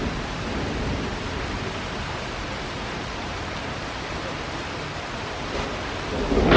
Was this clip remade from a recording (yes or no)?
no